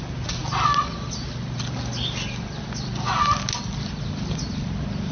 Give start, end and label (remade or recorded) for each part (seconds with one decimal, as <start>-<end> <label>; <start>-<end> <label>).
0.0-5.1 recorded